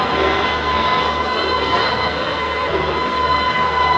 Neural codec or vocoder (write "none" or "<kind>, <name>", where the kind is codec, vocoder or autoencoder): codec, SNAC